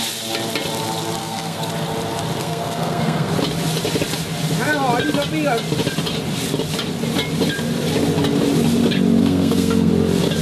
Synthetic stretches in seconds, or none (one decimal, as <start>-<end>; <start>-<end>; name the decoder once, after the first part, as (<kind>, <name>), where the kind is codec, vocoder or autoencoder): 1.2-1.7 (codec, SNAC); 2.4-3.3; 9.2-9.9